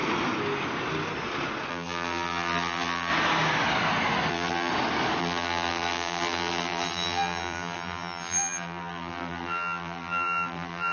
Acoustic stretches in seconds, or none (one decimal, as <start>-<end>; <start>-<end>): 0.0-1.7; 3.1-4.3; 4.7-5.2